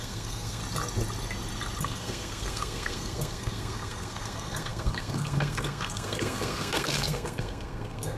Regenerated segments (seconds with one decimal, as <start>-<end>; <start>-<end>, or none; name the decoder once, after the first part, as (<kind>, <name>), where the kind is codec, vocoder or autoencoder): 0.0-0.6 (codec, SNAC); 1.8-8.2